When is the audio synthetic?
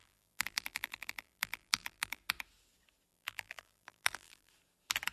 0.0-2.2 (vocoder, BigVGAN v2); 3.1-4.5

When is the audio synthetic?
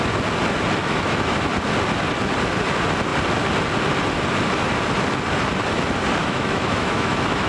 0.8-1.4 (autoencoder, DAC-VAE); 6.2-7.5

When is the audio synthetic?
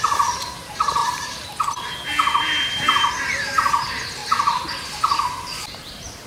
0.0-1.0 (vocoder, BigVGAN v2); 3.1-4.2; 5.2-6.3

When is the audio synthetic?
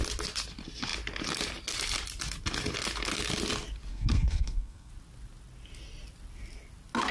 3.9-4.9 (codec, SNAC)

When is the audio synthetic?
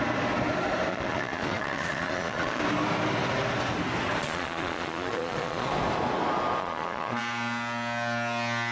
0.9-2.6 (vocoder, Vocos); 4.2-5.7; 6.6-7.2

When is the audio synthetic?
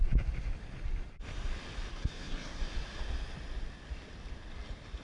1.9-2.6 (codec, SNAC)